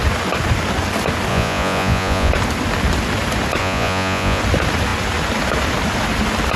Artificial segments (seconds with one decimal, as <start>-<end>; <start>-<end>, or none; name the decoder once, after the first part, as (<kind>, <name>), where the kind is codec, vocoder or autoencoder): 1.3-2.3 (vocoder, Vocos); 3.6-4.4